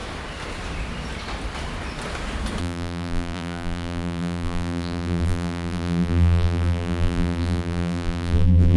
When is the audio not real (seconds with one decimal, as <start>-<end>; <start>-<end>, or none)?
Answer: 2.6-8.8